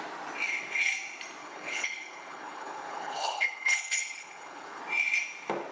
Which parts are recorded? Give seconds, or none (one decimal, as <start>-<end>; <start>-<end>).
0.0-1.4; 4.8-5.7